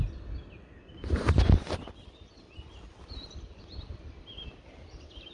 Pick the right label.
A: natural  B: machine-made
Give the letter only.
A